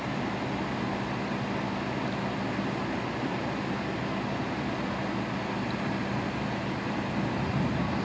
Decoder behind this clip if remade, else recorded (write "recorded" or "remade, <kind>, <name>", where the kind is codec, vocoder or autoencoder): recorded